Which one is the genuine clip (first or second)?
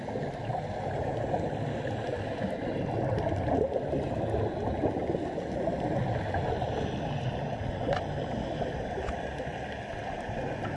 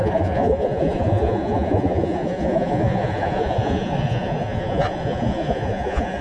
first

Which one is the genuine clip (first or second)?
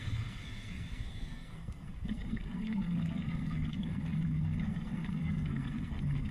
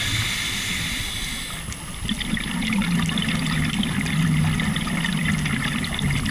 second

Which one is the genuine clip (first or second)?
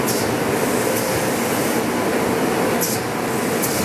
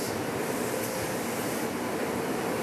first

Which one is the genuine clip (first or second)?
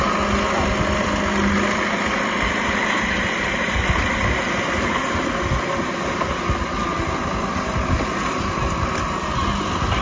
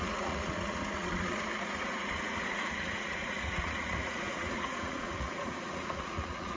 first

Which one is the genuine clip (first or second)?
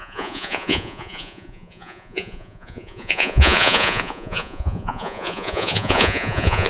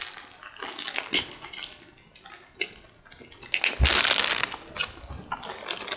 second